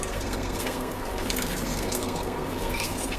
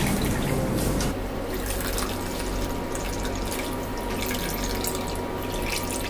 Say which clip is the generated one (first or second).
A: first